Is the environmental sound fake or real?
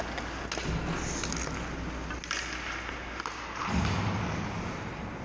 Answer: real